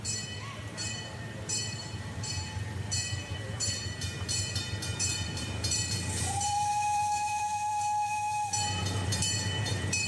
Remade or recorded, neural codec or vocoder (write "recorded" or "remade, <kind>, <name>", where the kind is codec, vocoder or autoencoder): remade, vocoder, BigVGAN v2